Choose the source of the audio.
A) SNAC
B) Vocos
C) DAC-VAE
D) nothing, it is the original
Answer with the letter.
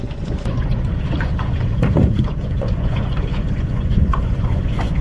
B